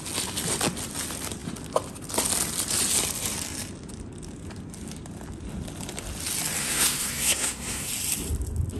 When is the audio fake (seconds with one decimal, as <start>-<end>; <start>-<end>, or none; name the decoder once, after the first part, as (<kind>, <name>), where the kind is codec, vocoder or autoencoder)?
6.6-7.9 (codec, SNAC)